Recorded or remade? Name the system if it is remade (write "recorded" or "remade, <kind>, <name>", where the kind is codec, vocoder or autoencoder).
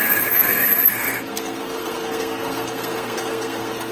remade, codec, SNAC